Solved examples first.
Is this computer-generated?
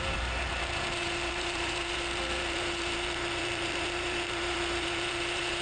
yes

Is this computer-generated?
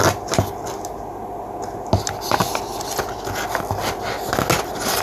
no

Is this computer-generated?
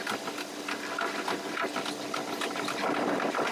no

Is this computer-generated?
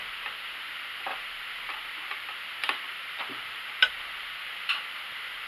yes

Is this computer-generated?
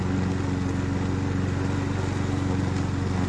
no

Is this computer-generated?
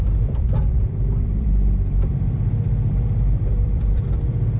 yes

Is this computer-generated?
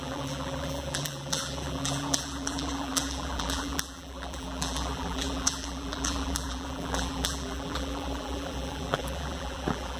yes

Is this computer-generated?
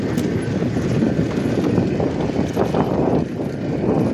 no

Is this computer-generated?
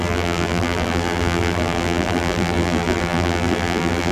yes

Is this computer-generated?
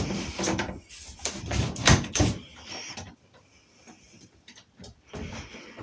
yes